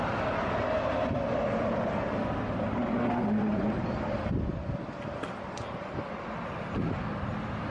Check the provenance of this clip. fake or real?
real